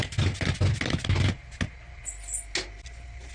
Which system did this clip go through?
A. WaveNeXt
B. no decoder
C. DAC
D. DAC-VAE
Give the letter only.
B